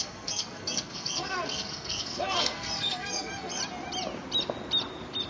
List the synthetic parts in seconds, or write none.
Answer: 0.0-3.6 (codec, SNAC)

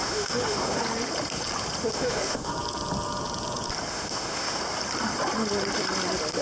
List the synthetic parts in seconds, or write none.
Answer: 0.0-0.8 (autoencoder, DAC-VAE); 1.9-2.5; 3.9-4.6

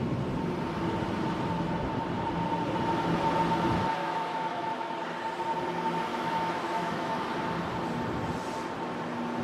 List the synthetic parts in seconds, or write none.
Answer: 4.0-4.9 (autoencoder, DAC-VAE); 6.1-7.2

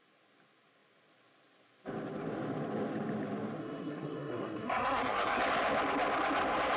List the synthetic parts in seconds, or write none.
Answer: 3.6-5.4 (codec, SNAC)

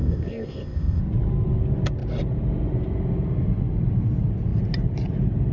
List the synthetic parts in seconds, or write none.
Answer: 0.0-1.0 (codec, ZipCodec)

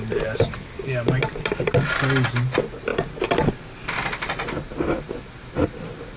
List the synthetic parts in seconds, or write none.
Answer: none

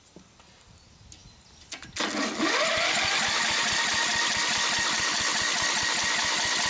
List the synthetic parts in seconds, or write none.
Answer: none